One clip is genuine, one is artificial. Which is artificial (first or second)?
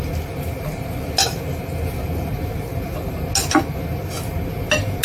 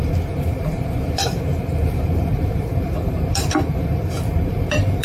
second